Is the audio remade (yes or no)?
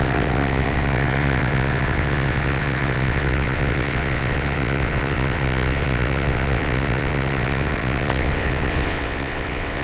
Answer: yes